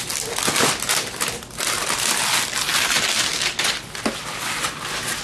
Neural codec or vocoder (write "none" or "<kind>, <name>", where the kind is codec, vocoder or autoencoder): none